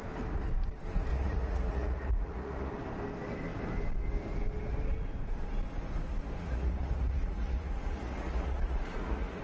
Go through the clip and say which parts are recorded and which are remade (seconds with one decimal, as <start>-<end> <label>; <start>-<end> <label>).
0.0-1.1 recorded; 1.1-2.7 remade; 2.7-6.4 recorded; 6.4-9.4 remade